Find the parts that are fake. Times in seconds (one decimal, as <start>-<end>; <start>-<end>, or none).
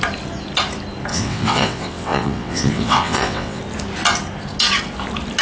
1.1-3.6